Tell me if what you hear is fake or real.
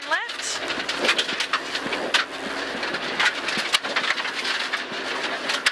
real